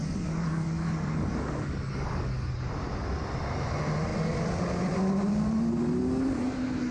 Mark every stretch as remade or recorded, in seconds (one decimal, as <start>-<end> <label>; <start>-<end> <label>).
0.0-2.7 remade; 2.7-6.9 recorded